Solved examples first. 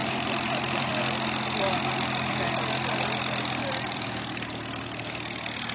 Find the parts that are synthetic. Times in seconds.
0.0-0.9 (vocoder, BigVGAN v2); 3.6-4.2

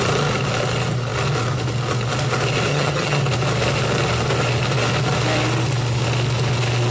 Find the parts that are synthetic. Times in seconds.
2.7-3.2 (vocoder, HiFi-GAN)

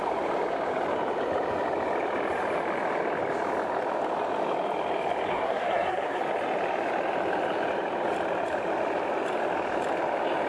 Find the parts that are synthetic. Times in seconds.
5.3-6.2 (codec, SNAC)

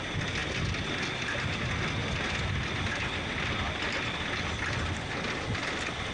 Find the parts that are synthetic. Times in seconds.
none

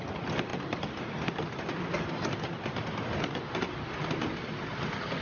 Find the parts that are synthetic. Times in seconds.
none

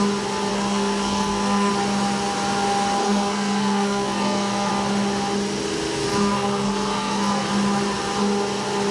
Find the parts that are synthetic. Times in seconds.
0.5-1.7 (codec, SNAC); 3.0-4.7; 6.1-7.5

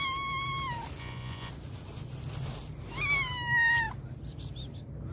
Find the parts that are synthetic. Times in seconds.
1.0-1.5 (vocoder, Vocos)

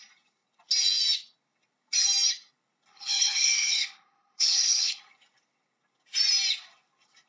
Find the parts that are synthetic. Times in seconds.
2.9-5.0 (codec, HILCodec)